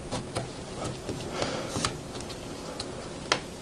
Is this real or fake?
real